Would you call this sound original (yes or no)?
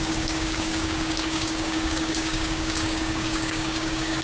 no